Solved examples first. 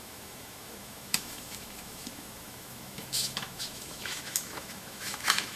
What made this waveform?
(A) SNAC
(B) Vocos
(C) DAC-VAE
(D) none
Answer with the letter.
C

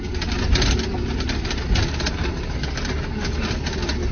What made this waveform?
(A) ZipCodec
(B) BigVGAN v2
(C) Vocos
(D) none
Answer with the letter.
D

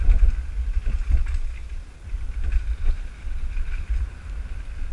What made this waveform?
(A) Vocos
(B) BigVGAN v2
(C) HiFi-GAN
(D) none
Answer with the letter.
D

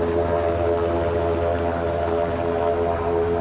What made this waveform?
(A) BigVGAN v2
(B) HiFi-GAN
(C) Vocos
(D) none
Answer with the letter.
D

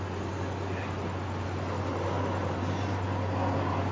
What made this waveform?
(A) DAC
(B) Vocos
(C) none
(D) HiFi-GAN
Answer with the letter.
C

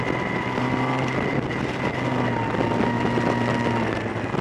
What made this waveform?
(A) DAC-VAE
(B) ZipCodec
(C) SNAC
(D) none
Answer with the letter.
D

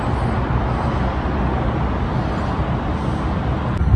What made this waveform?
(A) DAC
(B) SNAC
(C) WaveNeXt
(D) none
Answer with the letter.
D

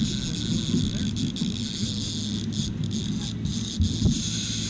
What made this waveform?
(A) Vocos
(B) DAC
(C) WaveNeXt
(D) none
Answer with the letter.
D